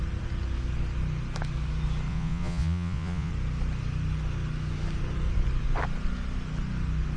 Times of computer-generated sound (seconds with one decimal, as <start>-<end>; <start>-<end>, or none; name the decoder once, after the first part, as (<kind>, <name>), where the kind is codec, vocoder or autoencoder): 2.1-3.3 (vocoder, Vocos)